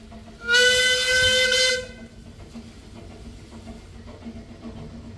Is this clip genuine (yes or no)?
yes